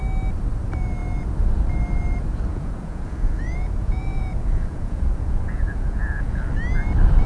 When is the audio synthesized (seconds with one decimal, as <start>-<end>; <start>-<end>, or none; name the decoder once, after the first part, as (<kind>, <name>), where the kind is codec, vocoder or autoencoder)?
2.5-6.4 (vocoder, Vocos)